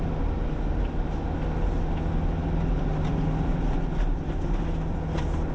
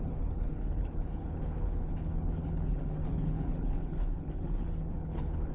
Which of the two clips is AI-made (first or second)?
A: second